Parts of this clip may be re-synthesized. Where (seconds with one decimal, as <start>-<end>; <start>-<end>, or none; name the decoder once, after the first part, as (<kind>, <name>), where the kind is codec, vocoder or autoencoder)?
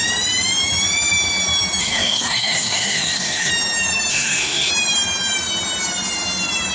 1.8-3.5 (codec, SNAC); 4.1-4.7